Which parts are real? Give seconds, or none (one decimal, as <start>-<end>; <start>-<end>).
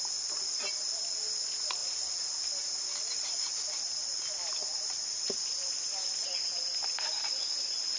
0.0-8.0